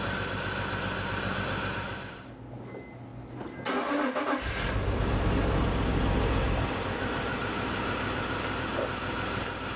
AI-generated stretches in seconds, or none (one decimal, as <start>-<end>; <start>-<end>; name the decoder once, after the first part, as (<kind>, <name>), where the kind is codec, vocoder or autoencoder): none